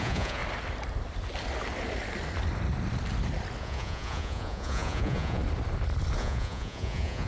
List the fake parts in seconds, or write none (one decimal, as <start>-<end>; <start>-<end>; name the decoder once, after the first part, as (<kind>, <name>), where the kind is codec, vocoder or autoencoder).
0.0-0.4 (vocoder, Vocos); 3.6-5.4; 6.2-7.3